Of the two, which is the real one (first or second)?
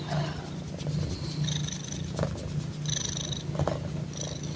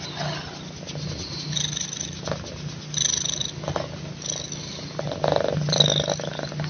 second